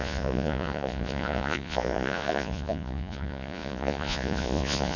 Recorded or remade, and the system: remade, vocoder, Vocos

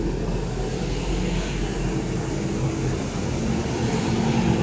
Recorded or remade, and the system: recorded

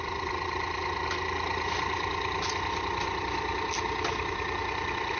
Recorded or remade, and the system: recorded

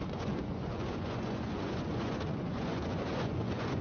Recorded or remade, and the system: remade, vocoder, Vocos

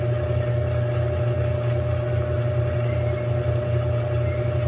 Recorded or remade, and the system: recorded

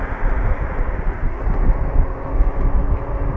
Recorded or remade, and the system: recorded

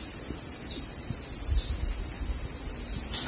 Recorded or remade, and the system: recorded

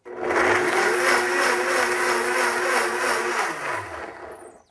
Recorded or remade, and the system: recorded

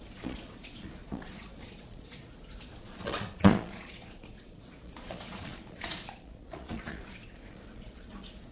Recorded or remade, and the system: remade, vocoder, Vocos